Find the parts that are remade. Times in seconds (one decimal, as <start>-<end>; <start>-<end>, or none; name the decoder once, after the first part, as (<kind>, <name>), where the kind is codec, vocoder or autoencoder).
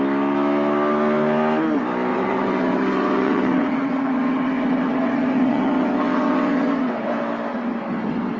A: 2.1-7.1 (vocoder, WaveNeXt); 7.5-8.4